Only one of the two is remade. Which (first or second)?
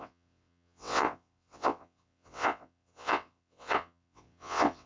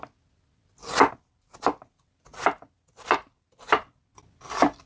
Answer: first